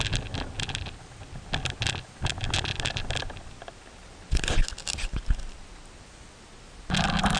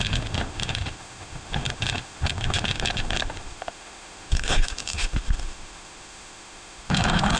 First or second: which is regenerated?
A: second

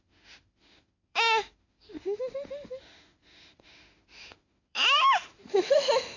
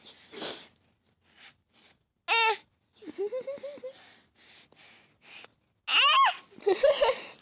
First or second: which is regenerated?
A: first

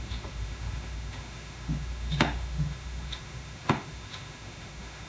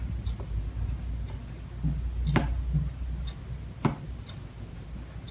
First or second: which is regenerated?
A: first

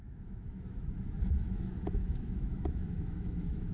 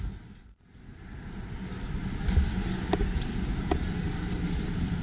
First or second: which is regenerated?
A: first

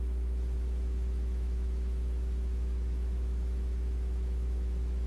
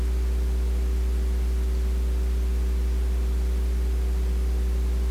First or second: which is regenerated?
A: first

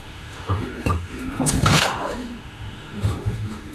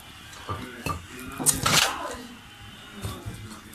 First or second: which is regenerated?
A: first